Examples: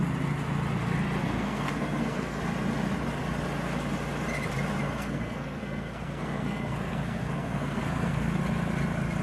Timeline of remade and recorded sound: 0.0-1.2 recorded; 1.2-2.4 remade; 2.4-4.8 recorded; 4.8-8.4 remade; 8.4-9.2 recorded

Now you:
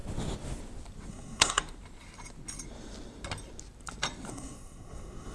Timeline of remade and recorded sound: 0.0-1.1 recorded; 1.1-1.6 remade; 1.6-4.3 recorded; 4.3-5.3 remade

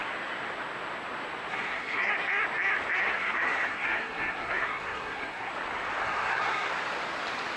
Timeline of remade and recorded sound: 0.0-1.5 recorded; 1.5-2.1 remade; 2.1-3.0 recorded; 3.0-5.5 remade; 5.5-6.0 recorded; 6.0-6.7 remade; 6.7-7.6 recorded